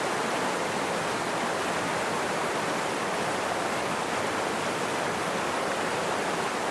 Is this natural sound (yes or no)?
yes